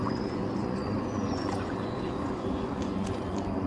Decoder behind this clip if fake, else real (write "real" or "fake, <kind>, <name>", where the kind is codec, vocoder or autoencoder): fake, vocoder, Vocos